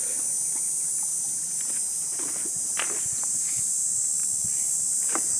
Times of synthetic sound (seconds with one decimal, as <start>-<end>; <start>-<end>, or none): 1.1-3.6

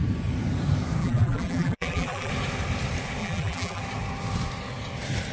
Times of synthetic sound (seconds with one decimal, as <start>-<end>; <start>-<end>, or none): 1.0-2.3; 3.2-3.8

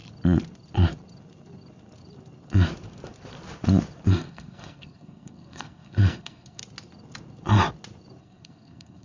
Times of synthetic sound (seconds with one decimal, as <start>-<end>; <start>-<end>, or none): 4.1-6.6; 8.2-9.0

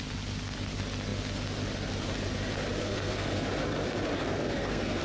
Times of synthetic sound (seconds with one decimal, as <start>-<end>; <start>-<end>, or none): 2.8-3.5; 4.2-5.0

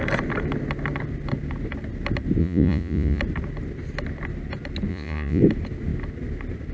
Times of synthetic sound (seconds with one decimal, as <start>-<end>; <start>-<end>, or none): 2.4-3.2; 4.9-5.4

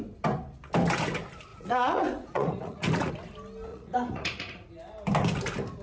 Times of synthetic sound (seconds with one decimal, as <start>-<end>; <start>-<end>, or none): 1.5-3.1; 3.7-4.7

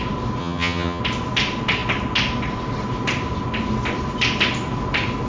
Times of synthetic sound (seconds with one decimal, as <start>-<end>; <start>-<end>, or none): 0.4-1.0

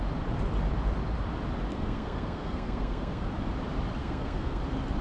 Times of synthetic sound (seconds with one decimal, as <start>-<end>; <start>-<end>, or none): 1.7-3.3; 4.0-4.6